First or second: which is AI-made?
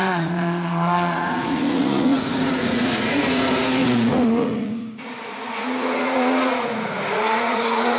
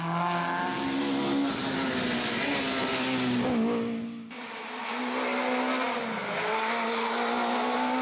first